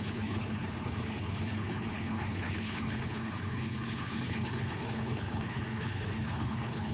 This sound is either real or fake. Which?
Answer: fake